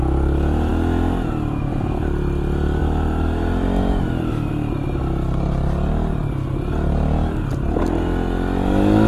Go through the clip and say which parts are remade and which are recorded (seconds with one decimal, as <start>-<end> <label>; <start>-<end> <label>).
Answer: 0.0-9.1 recorded

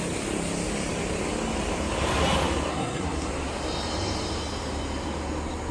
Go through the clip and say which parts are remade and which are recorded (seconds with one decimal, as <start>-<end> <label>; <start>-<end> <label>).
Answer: 0.0-2.7 recorded; 2.7-3.3 remade; 3.3-5.7 recorded

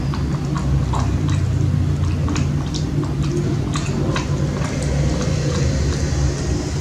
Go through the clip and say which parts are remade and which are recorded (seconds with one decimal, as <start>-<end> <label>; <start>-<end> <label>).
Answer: 0.0-6.8 recorded

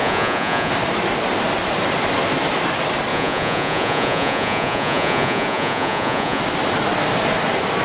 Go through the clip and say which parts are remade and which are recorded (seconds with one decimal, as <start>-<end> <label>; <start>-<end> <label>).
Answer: 0.0-0.7 remade; 0.7-3.1 recorded; 3.1-6.4 remade; 6.4-7.8 recorded

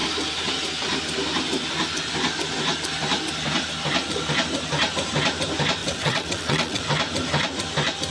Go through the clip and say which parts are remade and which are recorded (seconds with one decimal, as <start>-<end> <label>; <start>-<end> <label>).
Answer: 0.0-5.8 recorded; 5.8-6.8 remade; 6.8-8.1 recorded

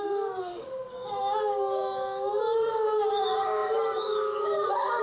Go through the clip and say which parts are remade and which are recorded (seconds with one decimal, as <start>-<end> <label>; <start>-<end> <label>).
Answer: 0.0-5.0 remade

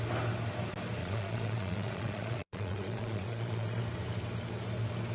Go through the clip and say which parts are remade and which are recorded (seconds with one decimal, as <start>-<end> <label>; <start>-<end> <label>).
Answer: 0.0-1.0 recorded; 1.0-3.8 remade; 3.8-5.1 recorded